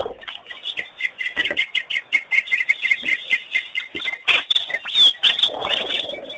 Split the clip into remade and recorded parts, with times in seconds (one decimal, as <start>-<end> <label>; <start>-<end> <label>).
0.0-3.3 remade; 3.3-6.4 recorded